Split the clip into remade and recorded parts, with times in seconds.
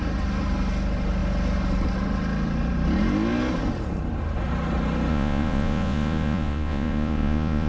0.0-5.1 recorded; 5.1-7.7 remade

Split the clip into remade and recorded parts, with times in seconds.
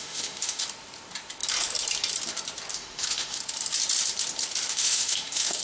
0.0-0.6 remade; 0.6-2.7 recorded; 2.7-3.4 remade; 3.4-4.7 recorded; 4.7-5.6 remade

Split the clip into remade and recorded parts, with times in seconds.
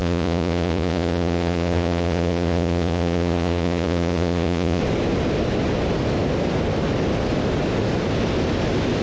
0.0-4.8 remade; 4.8-9.0 recorded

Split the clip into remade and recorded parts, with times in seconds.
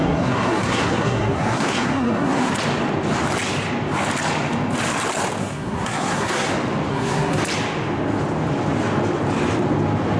0.0-2.5 remade; 2.5-5.4 recorded; 5.4-6.5 remade; 6.5-6.9 recorded; 6.9-7.4 remade; 7.4-10.2 recorded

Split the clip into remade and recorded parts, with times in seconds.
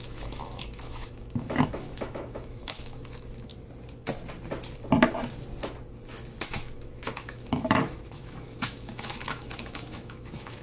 0.0-3.5 remade; 3.5-6.4 recorded; 6.4-10.6 remade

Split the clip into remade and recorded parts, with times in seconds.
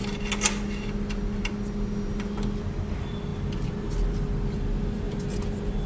0.0-5.9 recorded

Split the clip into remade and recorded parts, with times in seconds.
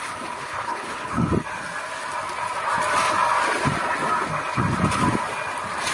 0.0-0.4 recorded; 0.4-1.3 remade; 1.3-5.9 recorded